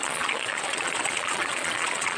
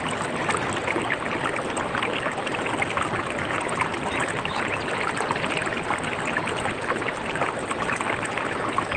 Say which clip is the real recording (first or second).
second